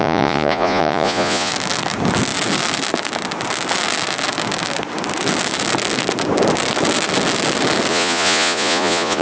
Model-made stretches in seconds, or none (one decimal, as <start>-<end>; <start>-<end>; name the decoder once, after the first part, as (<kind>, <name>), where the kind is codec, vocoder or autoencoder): 0.0-1.5 (vocoder, Vocos); 7.9-9.2